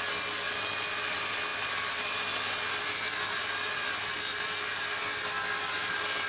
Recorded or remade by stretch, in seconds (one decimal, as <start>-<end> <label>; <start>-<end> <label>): 0.0-6.3 recorded